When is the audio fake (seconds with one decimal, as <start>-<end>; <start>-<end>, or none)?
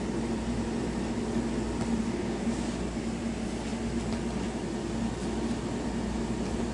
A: 2.0-2.5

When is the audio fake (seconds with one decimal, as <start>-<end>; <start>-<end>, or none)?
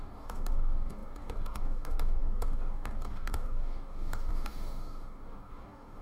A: 0.0-6.0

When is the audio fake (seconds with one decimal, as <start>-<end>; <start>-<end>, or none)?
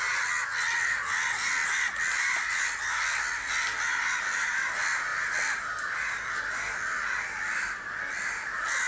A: none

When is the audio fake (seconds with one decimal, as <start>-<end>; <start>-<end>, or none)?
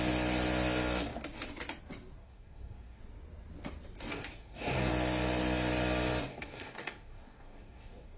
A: 2.2-3.0; 4.1-4.9; 6.3-8.2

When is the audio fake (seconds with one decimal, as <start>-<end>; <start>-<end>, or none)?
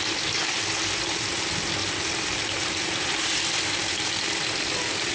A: none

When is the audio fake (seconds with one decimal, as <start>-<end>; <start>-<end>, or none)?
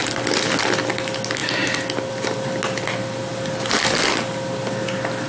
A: none